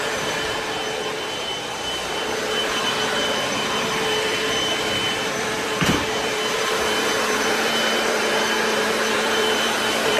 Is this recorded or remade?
remade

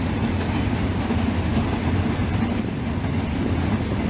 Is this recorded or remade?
recorded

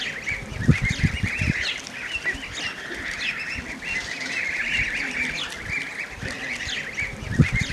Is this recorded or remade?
recorded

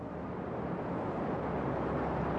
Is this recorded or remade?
recorded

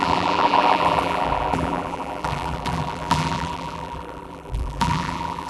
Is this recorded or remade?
remade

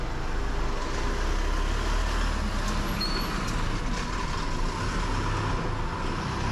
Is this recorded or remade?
recorded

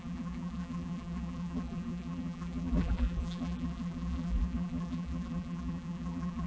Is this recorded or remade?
remade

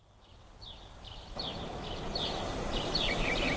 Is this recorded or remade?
remade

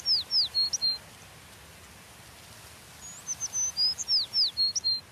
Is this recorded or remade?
recorded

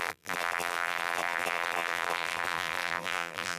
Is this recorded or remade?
remade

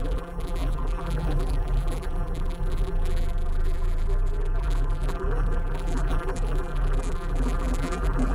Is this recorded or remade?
remade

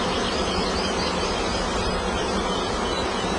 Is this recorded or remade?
recorded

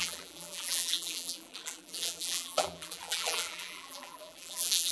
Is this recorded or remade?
remade